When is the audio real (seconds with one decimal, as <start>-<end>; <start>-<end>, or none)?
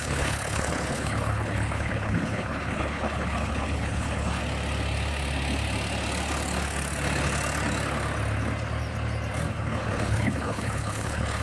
4.4-9.5